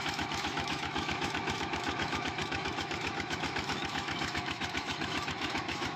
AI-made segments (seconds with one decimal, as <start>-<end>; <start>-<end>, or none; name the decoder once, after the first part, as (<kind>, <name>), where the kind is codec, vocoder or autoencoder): 0.0-6.0 (autoencoder, DAC-VAE)

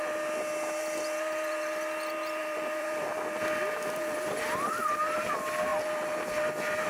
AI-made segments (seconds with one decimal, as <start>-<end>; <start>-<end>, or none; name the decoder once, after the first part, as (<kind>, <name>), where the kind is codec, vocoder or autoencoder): 2.4-4.4 (vocoder, BigVGAN v2)

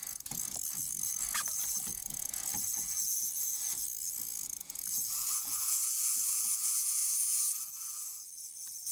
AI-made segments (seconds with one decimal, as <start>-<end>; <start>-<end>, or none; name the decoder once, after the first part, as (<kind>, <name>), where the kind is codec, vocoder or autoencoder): 0.0-8.9 (vocoder, Vocos)

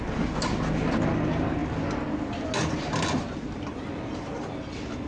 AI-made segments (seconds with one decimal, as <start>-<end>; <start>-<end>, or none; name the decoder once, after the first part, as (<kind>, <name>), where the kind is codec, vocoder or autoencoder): none

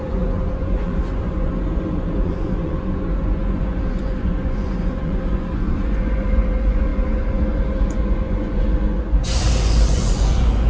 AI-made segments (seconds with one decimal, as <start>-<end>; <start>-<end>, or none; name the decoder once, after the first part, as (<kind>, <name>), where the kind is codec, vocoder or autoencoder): 0.0-10.7 (vocoder, Vocos)

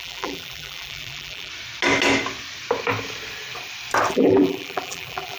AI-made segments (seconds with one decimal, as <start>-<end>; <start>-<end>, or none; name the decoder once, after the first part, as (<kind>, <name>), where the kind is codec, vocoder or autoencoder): 0.0-1.5 (vocoder, BigVGAN v2); 4.1-5.4

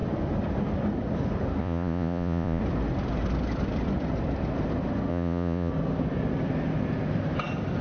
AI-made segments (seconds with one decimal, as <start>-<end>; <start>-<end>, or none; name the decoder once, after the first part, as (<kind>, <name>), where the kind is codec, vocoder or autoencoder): 1.6-2.6 (vocoder, Vocos); 5.1-5.7